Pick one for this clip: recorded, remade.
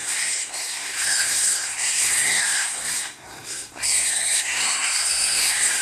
remade